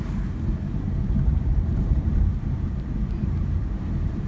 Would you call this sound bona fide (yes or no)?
no